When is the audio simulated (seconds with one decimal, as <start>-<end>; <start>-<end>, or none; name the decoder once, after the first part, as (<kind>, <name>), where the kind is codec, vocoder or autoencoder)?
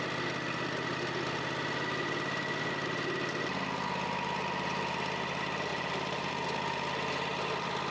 5.7-6.3 (vocoder, BigVGAN v2)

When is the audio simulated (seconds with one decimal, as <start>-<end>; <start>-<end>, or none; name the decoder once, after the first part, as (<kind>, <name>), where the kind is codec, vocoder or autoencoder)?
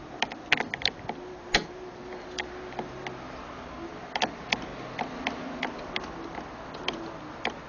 none